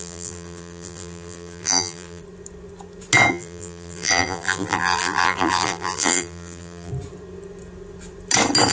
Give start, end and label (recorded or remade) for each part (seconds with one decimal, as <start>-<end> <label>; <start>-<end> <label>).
0.0-2.2 remade; 2.2-3.3 recorded; 3.3-6.9 remade; 6.9-8.7 recorded